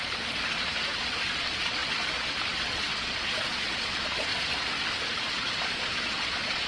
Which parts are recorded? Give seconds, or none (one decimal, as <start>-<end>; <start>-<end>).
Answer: 0.0-0.9; 1.8-2.6; 4.3-5.3